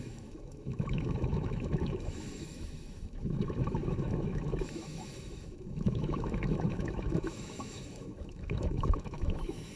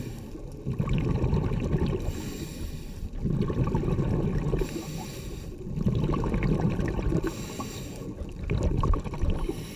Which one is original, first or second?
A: second